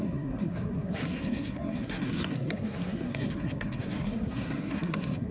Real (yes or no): no